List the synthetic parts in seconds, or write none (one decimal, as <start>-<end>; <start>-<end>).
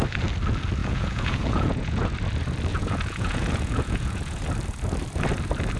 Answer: 0.8-2.1; 2.7-4.4